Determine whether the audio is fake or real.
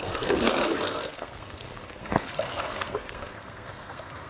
fake